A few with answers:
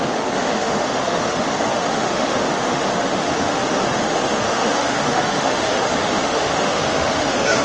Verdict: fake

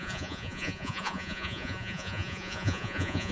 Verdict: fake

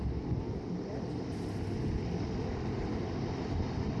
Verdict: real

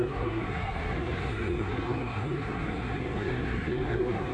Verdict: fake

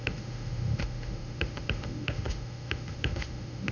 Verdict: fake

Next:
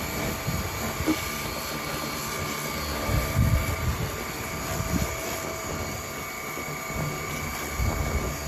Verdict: real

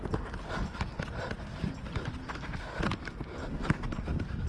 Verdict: real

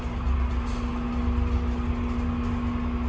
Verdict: real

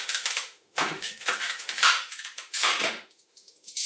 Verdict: fake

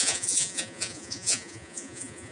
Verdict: fake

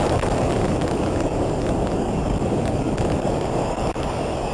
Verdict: fake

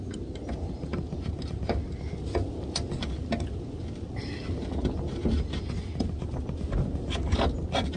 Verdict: real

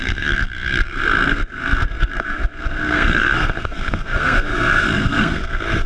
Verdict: fake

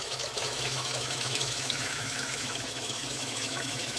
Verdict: fake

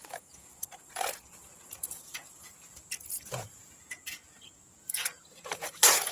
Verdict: fake